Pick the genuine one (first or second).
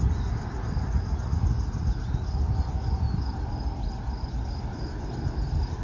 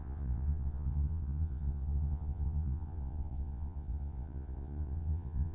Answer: first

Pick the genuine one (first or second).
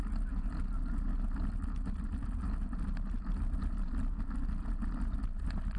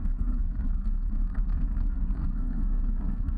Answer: first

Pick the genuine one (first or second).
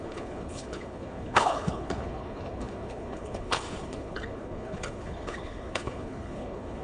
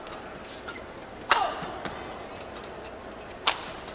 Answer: second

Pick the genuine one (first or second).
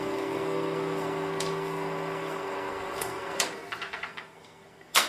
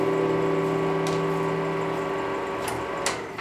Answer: second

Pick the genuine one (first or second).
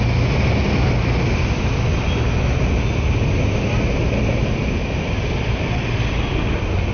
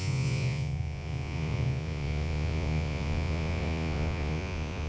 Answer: first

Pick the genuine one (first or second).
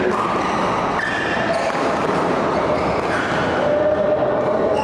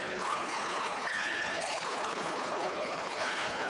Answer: first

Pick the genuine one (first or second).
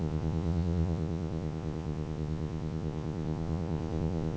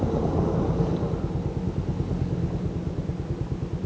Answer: second